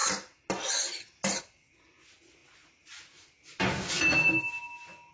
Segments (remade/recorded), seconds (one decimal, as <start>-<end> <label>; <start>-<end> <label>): 0.0-5.1 recorded